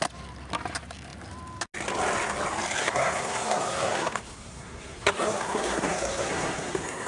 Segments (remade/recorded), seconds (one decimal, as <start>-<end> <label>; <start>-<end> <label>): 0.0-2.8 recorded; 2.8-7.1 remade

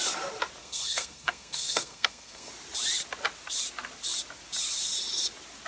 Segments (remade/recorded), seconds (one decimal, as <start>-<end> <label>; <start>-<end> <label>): 0.0-0.6 recorded; 0.6-2.5 remade; 2.5-5.7 recorded

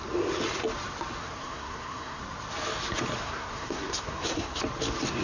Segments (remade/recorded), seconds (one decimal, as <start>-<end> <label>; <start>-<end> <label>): 0.0-1.2 recorded; 1.2-2.2 remade; 2.2-3.2 recorded; 3.2-4.6 remade; 4.6-5.2 recorded